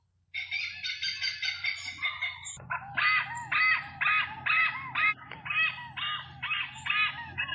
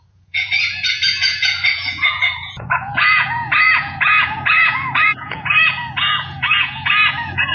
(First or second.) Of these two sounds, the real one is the first